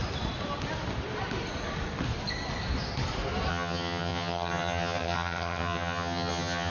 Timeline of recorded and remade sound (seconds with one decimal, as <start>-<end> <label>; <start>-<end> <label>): 0.0-3.5 recorded; 3.5-6.7 remade